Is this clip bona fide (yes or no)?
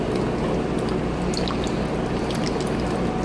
yes